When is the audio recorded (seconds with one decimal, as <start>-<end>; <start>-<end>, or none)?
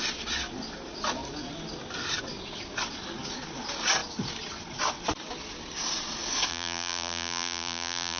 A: 0.0-6.5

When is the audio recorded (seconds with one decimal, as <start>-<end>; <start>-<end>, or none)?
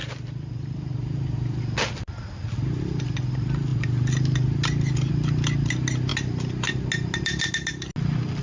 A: 1.6-8.4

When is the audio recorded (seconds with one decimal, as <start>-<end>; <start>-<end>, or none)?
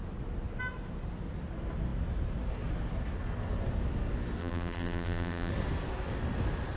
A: 0.0-4.4; 5.5-6.8